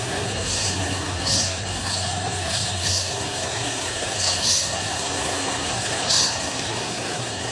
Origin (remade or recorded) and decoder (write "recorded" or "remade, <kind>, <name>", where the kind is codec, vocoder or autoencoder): remade, codec, SNAC